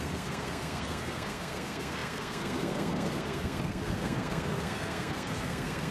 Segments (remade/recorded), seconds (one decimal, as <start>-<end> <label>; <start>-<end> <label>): 0.0-5.9 remade